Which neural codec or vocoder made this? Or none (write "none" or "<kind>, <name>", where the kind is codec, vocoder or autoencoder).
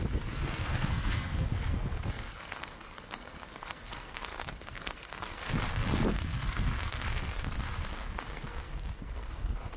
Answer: codec, SNAC